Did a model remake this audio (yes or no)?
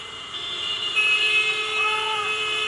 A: yes